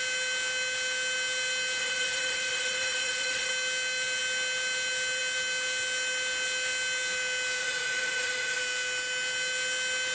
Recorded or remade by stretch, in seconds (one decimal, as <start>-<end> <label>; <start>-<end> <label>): 0.0-1.8 recorded; 1.8-3.5 remade; 3.5-7.6 recorded; 7.6-8.6 remade; 8.6-10.1 recorded